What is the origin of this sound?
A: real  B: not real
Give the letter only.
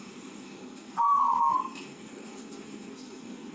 B